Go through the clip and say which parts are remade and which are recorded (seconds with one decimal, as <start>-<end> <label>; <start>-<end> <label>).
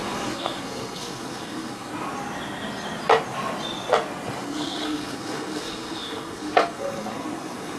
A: 0.0-1.9 remade; 1.9-4.4 recorded; 4.4-7.8 remade